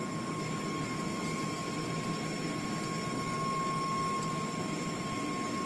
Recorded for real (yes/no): yes